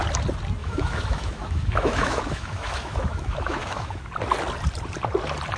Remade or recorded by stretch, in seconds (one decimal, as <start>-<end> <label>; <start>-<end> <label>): 0.0-0.6 recorded; 0.6-4.0 remade; 4.0-5.6 recorded